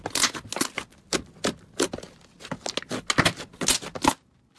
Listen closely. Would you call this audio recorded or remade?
recorded